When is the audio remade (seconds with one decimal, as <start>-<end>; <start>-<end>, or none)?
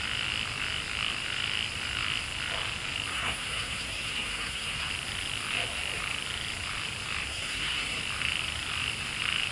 3.1-4.9; 7.3-8.0